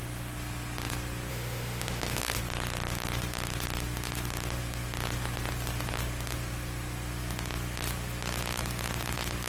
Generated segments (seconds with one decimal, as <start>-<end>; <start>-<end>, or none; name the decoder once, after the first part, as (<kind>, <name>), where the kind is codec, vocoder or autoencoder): 1.3-2.4 (autoencoder, DAC-VAE)